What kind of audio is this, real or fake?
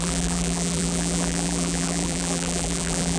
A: fake